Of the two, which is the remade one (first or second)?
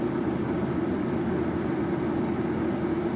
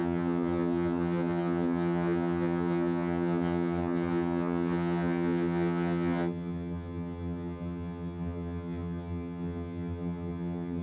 second